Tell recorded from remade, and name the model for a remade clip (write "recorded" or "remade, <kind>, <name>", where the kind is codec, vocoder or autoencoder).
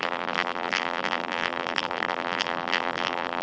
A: remade, vocoder, BigVGAN v2